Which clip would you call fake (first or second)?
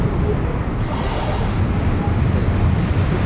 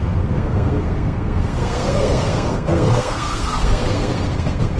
second